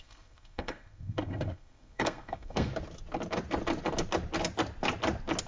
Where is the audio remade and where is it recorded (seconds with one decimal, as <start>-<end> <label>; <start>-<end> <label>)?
0.0-2.7 remade; 2.7-5.5 recorded